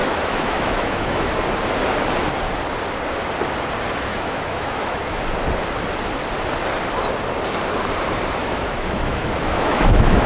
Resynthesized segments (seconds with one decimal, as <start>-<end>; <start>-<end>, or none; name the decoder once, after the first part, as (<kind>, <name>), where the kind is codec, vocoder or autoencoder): 0.0-1.3 (autoencoder, DAC-VAE); 4.1-5.2; 8.4-10.3